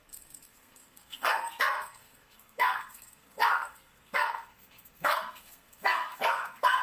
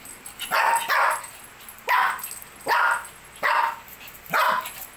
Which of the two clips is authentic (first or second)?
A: second